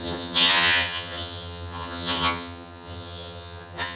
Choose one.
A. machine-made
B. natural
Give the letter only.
A